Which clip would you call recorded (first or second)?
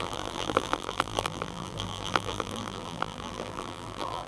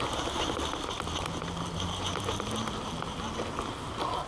second